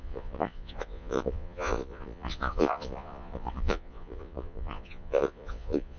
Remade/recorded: remade